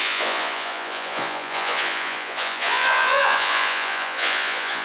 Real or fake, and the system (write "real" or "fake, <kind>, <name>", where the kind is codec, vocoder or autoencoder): fake, vocoder, Vocos